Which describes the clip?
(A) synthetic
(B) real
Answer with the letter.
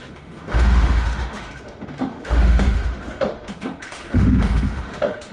A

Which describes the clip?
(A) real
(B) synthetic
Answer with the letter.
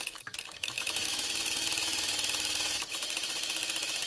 B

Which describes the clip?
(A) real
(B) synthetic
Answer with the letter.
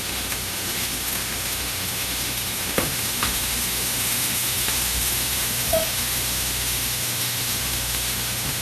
B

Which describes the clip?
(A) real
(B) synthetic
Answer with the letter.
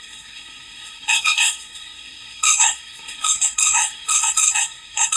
B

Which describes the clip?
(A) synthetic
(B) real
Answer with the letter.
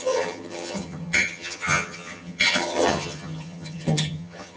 A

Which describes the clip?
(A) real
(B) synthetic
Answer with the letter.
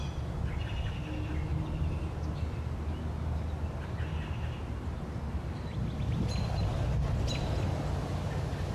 A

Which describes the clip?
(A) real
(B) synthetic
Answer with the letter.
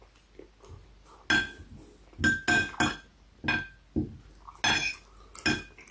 A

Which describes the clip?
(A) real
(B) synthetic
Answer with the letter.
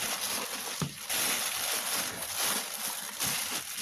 A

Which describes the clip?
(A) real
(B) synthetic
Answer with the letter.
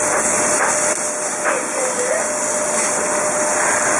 A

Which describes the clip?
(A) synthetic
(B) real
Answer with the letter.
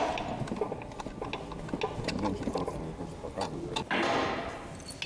B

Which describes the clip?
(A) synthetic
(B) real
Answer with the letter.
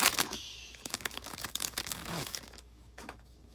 A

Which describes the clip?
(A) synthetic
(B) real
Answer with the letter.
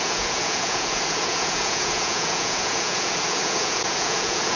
A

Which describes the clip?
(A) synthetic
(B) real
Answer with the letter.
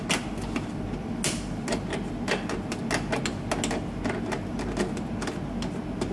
B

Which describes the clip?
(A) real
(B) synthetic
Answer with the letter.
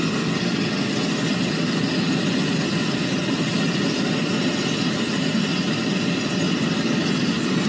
A